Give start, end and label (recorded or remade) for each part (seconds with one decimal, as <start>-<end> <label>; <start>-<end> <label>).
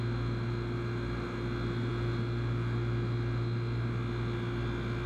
0.0-5.1 recorded